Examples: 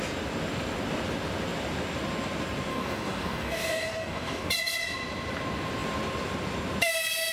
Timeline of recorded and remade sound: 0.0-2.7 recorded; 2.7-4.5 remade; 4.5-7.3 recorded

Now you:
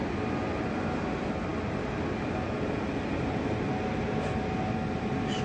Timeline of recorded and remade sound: 0.0-5.4 recorded

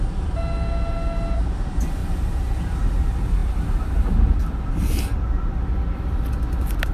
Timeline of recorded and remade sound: 0.0-2.0 recorded; 2.0-2.9 remade; 2.9-6.9 recorded

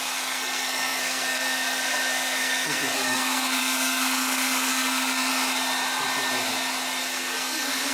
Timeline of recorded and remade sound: 0.0-5.3 remade; 5.3-7.0 recorded; 7.0-7.9 remade

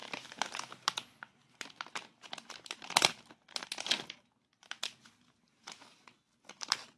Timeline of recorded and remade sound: 0.0-7.0 recorded